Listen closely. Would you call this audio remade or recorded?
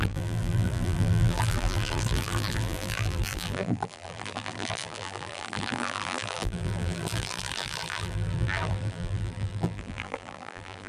remade